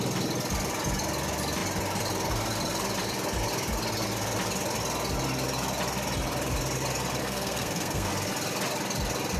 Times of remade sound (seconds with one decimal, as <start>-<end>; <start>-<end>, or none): 7.2-8.1